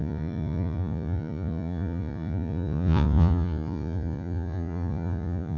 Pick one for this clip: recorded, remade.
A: remade